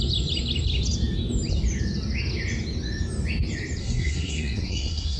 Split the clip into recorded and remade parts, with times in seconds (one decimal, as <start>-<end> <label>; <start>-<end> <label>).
0.0-3.8 recorded; 3.8-5.2 remade